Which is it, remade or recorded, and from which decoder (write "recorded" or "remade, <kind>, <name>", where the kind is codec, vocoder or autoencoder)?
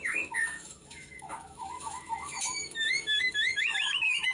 remade, autoencoder, DAC-VAE